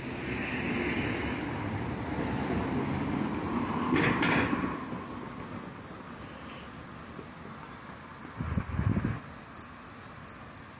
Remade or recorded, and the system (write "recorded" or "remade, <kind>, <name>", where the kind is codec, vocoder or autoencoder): recorded